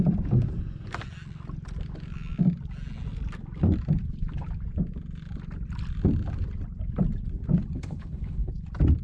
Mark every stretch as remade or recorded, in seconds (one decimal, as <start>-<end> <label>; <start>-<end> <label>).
0.0-7.7 recorded; 7.7-8.5 remade; 8.5-9.0 recorded